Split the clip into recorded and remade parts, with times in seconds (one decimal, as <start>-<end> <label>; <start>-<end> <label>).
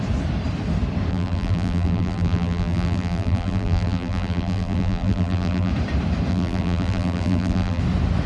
0.0-1.1 recorded; 1.1-5.7 remade; 5.7-6.3 recorded; 6.3-7.8 remade; 7.8-8.3 recorded